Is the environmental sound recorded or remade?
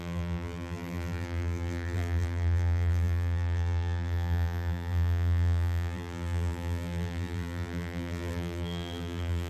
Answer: remade